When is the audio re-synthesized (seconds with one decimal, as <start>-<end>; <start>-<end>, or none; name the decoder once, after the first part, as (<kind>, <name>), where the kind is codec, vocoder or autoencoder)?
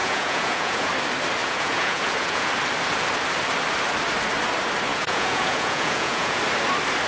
0.0-0.9 (vocoder, Vocos); 1.4-2.5; 4.9-6.4